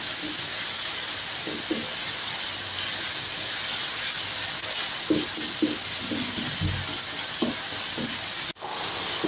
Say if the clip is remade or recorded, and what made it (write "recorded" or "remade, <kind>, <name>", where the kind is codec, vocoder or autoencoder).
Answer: recorded